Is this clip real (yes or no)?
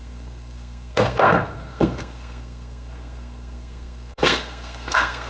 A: no